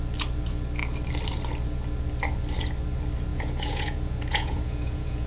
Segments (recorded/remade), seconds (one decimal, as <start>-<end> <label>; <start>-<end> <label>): 0.0-3.3 recorded; 3.3-5.3 remade